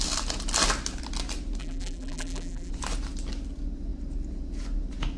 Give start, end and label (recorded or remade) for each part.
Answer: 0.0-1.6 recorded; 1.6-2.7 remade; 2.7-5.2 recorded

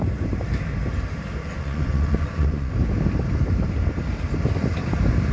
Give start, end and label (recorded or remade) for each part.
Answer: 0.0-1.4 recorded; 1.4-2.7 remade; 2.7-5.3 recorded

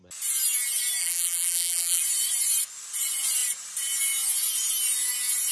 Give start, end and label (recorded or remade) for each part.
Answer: 0.0-1.0 recorded; 1.0-2.0 remade; 2.0-5.5 recorded